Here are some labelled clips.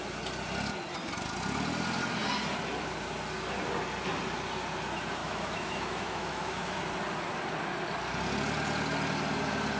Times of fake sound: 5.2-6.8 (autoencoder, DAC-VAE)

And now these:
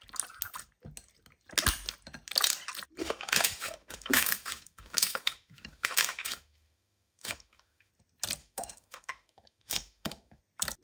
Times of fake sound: 3.0-7.9 (autoencoder, DAC-VAE); 8.4-10.4